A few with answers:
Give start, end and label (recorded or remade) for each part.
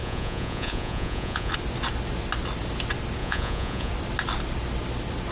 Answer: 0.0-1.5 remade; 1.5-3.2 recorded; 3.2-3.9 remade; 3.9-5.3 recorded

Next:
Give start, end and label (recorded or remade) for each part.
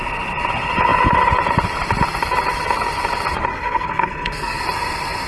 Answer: 0.0-3.5 recorded; 3.5-4.6 remade; 4.6-5.3 recorded